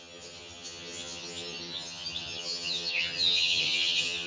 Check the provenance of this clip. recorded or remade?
remade